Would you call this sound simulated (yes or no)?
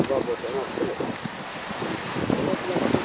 no